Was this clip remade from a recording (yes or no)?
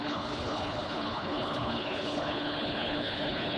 yes